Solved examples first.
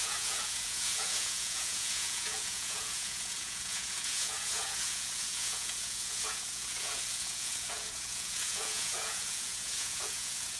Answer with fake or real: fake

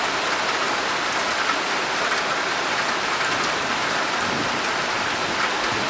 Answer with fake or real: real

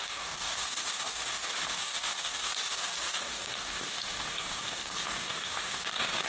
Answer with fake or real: fake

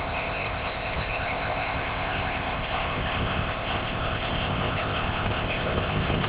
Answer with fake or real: fake